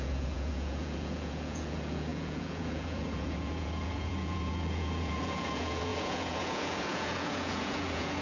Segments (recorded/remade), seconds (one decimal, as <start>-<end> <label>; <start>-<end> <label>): 0.0-8.2 remade